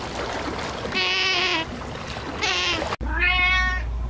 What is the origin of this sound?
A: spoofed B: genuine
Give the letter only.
B